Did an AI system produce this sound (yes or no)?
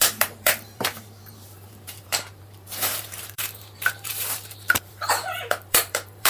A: yes